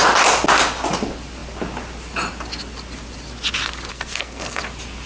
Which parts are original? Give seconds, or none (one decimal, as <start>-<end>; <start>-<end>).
0.0-3.9; 4.6-5.1